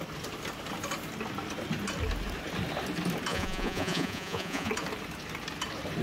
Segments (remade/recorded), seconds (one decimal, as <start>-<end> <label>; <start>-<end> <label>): 0.0-3.3 recorded; 3.3-4.7 remade; 4.7-6.0 recorded